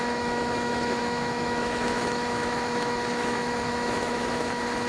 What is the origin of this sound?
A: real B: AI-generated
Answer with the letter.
B